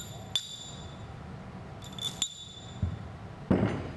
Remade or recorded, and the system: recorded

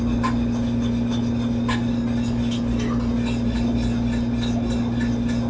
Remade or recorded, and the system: recorded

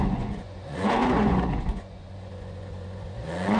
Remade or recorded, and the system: remade, vocoder, Vocos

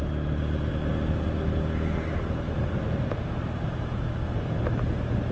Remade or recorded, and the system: recorded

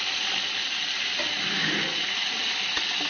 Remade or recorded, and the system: recorded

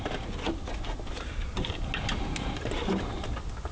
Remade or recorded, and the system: recorded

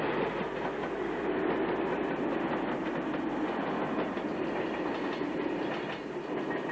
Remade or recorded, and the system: recorded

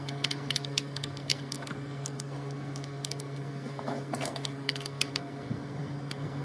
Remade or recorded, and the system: remade, codec, SNAC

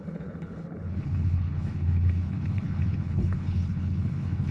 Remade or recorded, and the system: remade, codec, HILCodec